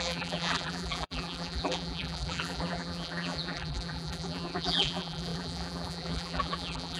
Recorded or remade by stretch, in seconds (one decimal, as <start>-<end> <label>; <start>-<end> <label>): 0.0-7.0 remade